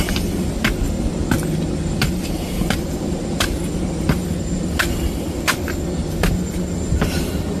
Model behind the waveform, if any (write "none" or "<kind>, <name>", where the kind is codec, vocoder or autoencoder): none